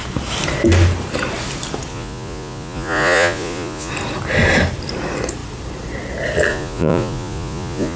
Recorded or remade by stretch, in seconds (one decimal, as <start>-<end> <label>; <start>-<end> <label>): 0.0-1.9 recorded; 1.9-3.9 remade; 3.9-6.5 recorded; 6.5-8.0 remade